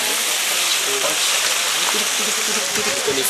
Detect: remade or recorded recorded